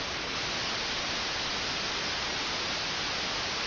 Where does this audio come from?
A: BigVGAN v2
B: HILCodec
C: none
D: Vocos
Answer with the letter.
C